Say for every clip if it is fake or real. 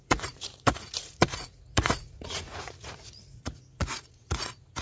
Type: fake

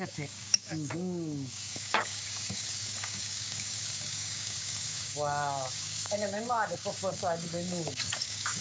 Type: fake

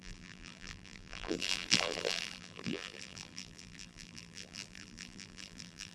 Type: fake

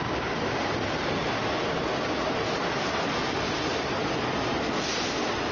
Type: real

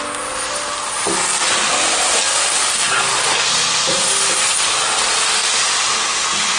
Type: real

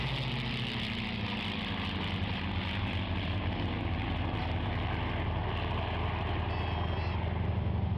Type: real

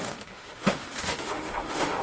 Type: fake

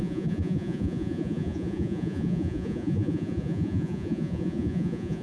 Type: fake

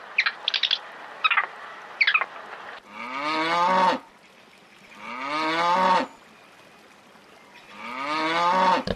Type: real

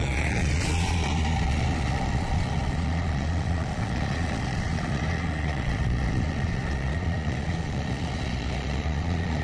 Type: fake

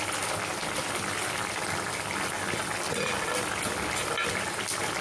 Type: real